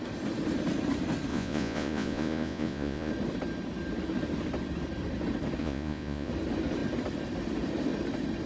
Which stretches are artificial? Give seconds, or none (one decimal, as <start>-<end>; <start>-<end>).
1.3-3.1; 5.6-6.3